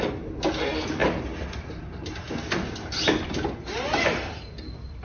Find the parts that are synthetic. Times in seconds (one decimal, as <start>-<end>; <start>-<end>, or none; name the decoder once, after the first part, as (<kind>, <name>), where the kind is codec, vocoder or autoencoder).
none